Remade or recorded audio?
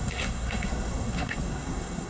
remade